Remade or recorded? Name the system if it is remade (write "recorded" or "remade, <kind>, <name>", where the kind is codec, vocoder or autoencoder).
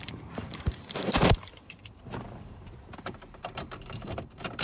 remade, vocoder, BigVGAN v2